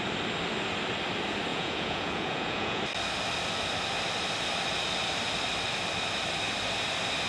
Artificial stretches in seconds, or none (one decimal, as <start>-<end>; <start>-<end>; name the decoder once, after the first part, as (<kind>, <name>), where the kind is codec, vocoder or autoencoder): 1.5-2.8 (vocoder, Vocos)